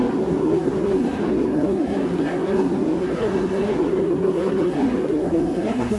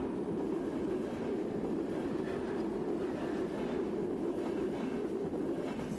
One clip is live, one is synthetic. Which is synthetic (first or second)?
first